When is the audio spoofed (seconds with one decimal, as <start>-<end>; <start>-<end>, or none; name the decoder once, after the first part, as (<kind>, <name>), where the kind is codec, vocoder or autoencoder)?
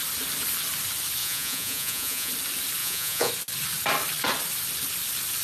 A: 1.2-2.3 (vocoder, Vocos); 2.8-3.3